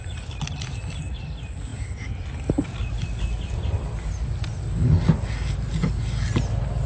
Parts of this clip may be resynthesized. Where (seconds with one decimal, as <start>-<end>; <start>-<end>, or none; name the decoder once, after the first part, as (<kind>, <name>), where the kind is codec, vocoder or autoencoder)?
none